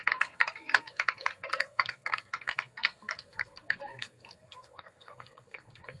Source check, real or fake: fake